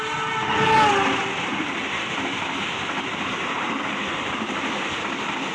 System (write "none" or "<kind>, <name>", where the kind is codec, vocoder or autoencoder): none